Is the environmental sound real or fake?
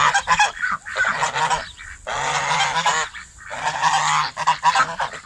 real